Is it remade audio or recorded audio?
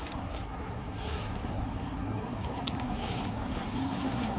remade